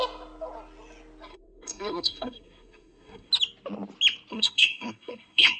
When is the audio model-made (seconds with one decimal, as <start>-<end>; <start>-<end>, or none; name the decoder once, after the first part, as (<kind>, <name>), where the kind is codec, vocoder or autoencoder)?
1.3-3.3 (codec, SNAC); 4.3-5.6